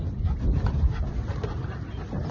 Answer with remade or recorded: recorded